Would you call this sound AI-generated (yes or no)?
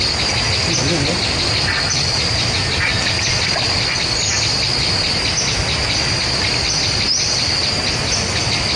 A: no